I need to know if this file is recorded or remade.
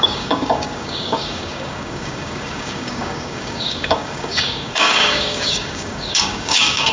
remade